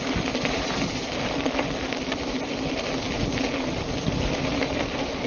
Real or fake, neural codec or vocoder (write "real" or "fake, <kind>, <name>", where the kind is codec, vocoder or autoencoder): real